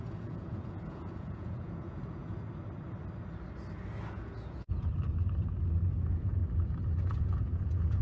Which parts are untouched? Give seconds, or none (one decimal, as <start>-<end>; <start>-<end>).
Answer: 2.2-4.1; 4.9-6.0; 6.4-7.2